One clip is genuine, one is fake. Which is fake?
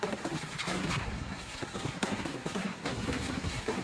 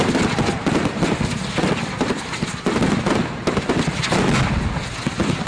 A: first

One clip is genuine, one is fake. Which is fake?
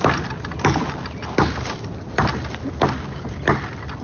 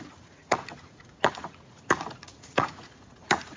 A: second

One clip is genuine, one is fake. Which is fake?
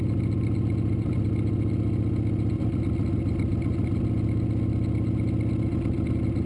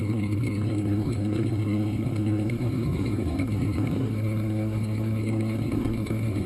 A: second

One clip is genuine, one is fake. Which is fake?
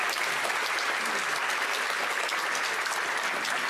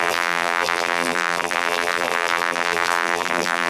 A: second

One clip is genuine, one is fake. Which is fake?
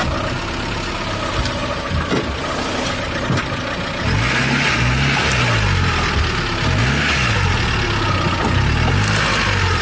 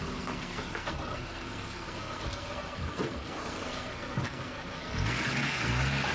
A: second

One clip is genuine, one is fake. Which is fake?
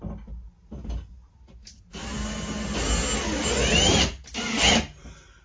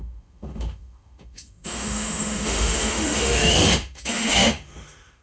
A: second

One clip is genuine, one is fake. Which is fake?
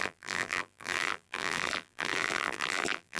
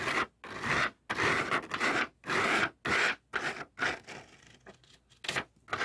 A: first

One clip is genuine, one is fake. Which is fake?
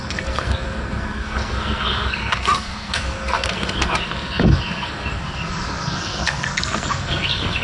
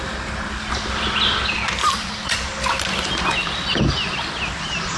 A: first